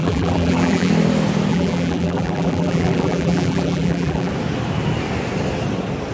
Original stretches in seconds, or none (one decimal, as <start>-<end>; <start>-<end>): 0.9-1.5; 4.3-6.1